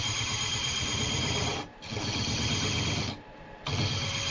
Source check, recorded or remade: recorded